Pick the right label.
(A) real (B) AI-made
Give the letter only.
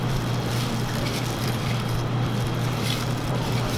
B